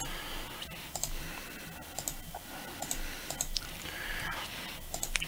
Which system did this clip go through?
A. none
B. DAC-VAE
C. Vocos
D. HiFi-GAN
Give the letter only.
A